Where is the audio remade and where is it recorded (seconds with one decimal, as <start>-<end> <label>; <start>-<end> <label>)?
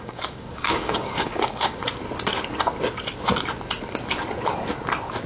0.0-1.8 remade; 1.8-5.3 recorded